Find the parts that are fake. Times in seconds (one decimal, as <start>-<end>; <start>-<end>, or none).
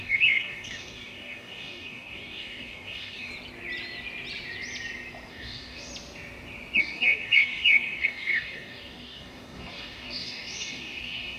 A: 0.0-3.3; 5.3-5.9; 6.8-11.4